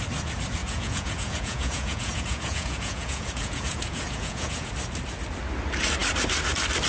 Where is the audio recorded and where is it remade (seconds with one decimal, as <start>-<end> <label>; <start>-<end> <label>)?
0.0-0.6 recorded; 0.6-4.7 remade; 4.7-6.9 recorded